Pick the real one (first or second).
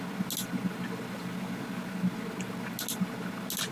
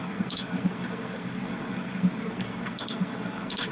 first